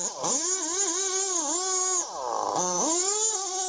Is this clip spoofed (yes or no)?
no